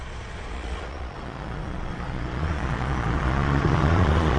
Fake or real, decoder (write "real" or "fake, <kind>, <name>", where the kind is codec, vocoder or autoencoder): fake, vocoder, Vocos